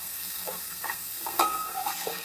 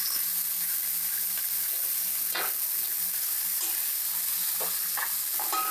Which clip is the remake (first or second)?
first